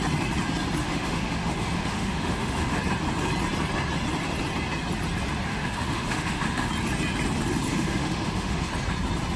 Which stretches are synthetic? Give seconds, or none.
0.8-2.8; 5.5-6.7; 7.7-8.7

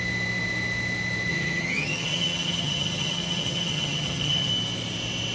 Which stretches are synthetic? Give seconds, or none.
1.3-4.5

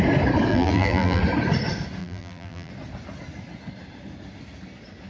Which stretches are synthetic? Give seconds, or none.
0.5-1.2; 2.0-2.7

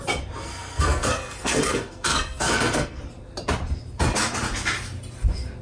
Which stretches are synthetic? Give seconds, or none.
0.4-3.0

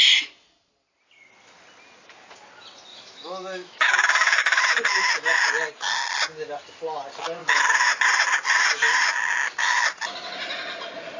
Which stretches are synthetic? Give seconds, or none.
2.9-5.5; 7.4-8.0